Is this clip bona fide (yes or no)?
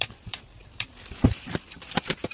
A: no